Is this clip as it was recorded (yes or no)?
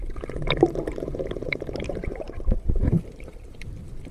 no